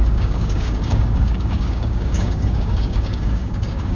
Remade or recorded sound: remade